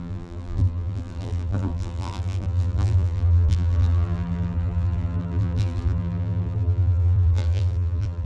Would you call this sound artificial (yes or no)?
yes